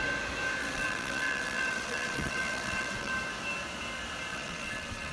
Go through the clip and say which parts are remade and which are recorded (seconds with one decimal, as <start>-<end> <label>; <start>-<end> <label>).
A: 0.0-0.6 recorded; 0.6-3.1 remade; 3.1-4.3 recorded; 4.3-5.1 remade